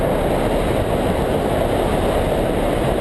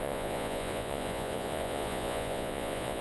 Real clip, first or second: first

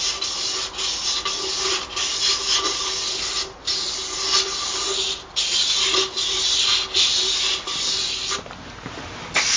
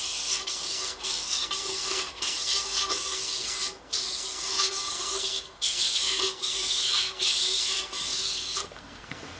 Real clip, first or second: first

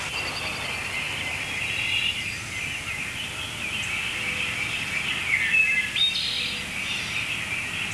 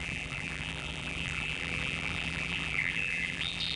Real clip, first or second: first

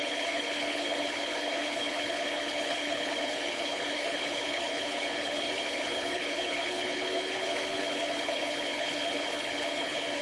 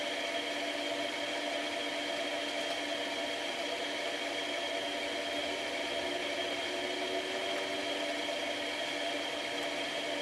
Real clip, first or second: second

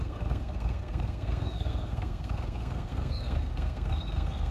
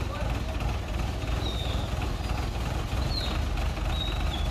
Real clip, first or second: second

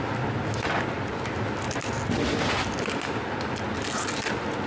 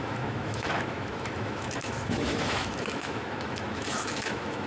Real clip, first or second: first